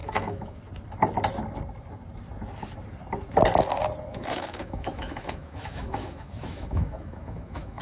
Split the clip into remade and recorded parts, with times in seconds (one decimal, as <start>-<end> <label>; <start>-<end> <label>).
0.0-0.6 remade; 0.6-4.1 recorded; 4.1-7.8 remade